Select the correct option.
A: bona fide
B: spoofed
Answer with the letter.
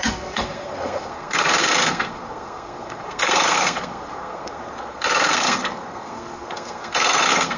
B